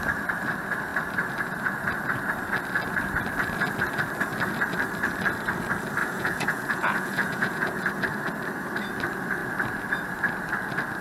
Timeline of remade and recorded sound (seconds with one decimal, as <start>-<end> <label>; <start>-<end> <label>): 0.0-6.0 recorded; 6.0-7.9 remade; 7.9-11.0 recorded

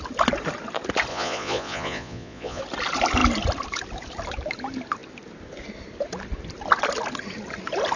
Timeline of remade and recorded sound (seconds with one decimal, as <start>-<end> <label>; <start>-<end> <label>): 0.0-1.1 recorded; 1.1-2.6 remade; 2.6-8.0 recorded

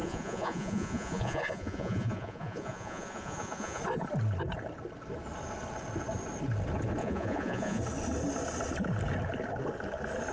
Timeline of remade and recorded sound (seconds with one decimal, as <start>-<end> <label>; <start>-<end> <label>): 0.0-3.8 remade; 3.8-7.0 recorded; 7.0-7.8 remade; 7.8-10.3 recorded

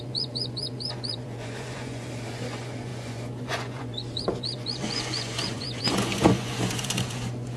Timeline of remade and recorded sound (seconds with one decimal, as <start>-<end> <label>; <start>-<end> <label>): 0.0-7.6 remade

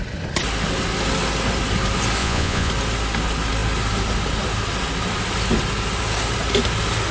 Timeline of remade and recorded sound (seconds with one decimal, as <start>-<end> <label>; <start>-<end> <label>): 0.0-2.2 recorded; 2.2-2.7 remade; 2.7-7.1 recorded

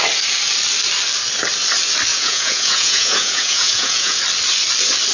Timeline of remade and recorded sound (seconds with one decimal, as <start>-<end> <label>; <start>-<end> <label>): 0.0-2.1 recorded; 2.1-4.2 remade; 4.2-5.1 recorded

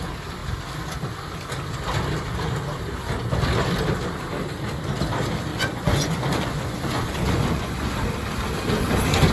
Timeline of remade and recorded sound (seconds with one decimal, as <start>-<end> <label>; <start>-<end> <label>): 0.0-5.5 recorded; 5.5-7.9 remade; 7.9-9.3 recorded

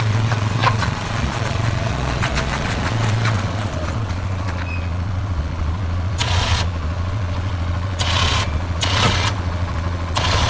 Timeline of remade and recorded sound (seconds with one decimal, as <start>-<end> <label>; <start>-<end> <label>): 0.0-10.5 remade